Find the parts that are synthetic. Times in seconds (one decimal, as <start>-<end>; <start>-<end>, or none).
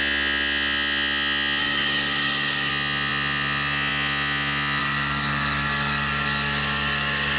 1.6-2.7; 4.8-7.4